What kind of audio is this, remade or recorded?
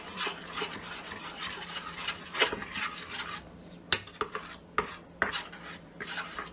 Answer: recorded